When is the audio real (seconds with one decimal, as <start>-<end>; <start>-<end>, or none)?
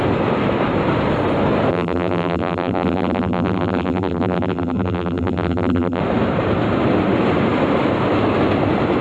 0.0-1.7; 6.0-9.0